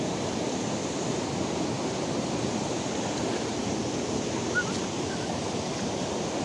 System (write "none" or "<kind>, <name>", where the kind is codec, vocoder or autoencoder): none